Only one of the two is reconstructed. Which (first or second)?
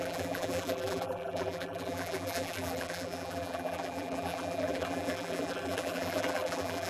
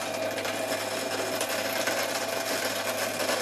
first